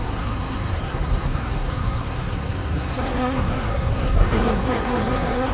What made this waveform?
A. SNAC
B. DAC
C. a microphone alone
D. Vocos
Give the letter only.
A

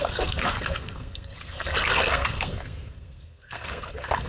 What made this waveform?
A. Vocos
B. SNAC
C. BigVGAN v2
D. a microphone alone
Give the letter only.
B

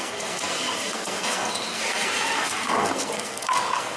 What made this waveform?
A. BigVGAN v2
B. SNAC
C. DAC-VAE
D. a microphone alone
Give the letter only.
B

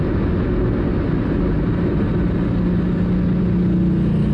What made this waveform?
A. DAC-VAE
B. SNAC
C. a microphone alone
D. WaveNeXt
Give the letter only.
C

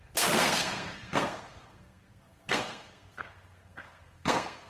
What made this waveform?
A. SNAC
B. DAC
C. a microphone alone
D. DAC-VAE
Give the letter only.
A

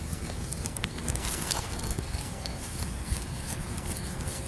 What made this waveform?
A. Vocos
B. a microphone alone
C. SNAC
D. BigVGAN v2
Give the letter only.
C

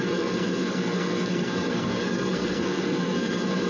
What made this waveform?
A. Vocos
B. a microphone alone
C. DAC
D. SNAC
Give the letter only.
D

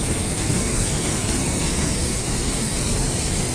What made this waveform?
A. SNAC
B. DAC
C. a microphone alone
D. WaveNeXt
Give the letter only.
A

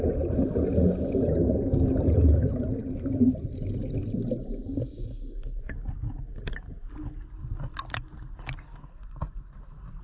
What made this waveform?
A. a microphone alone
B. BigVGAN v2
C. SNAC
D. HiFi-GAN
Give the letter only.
A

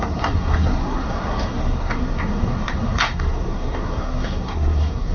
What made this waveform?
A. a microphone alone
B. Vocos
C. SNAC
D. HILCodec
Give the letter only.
C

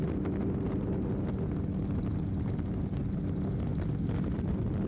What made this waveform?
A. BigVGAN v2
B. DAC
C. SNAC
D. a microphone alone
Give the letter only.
D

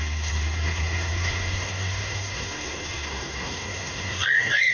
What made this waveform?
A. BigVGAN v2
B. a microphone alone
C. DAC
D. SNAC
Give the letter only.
D